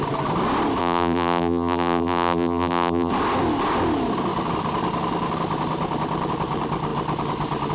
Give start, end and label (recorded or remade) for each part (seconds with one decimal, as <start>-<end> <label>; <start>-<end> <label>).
0.0-0.8 recorded; 0.8-3.1 remade; 3.1-7.7 recorded